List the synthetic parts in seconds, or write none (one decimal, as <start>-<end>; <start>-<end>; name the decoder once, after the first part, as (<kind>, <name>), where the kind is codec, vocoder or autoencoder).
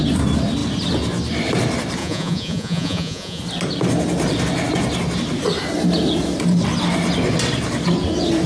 2.0-3.4 (vocoder, Vocos)